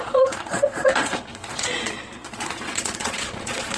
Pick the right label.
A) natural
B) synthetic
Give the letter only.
B